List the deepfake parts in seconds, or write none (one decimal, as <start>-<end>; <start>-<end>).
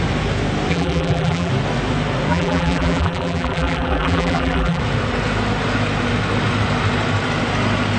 0.7-1.5; 2.3-4.8